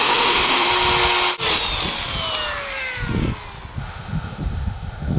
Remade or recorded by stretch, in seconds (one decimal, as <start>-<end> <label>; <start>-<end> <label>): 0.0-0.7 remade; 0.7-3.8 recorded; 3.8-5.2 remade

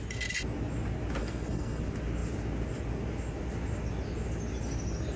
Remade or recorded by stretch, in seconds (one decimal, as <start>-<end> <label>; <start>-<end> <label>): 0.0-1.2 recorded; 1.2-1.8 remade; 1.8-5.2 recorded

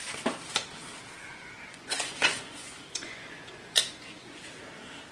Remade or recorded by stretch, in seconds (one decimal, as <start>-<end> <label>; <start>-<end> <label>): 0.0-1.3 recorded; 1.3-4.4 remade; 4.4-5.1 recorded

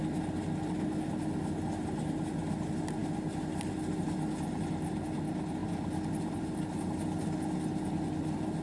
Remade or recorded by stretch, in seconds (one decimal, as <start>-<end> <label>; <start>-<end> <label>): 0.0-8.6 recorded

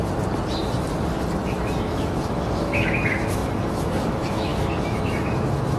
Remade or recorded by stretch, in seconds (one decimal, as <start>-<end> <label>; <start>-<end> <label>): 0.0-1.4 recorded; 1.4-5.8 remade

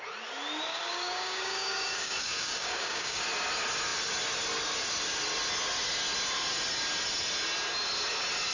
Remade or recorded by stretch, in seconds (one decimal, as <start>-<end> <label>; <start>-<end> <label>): 0.0-0.7 recorded; 0.7-3.2 remade; 3.2-8.5 recorded

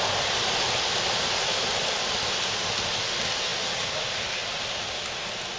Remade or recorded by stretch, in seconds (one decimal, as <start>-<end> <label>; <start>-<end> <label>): 0.0-5.6 recorded

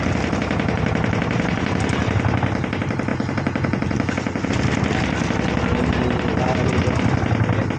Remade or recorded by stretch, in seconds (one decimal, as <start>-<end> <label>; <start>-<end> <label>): 0.0-3.1 recorded; 3.1-4.5 remade; 4.5-7.8 recorded